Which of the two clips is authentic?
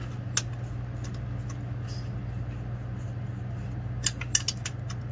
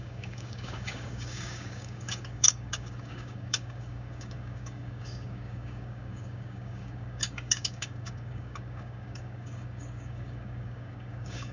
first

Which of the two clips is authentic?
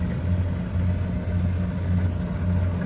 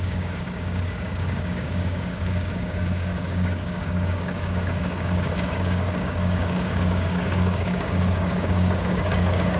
first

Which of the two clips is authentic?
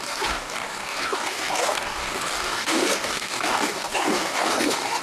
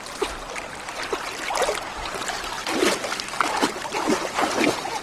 second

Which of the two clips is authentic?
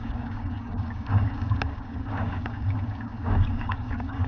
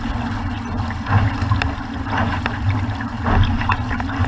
second